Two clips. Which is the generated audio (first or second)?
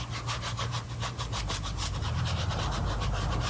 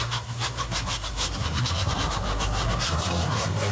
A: second